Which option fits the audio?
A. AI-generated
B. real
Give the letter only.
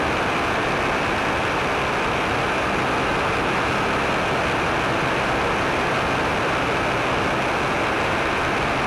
B